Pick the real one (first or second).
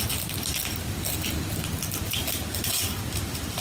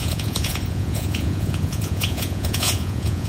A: first